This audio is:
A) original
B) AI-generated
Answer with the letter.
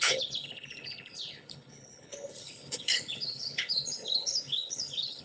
B